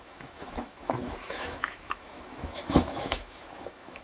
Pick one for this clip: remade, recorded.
remade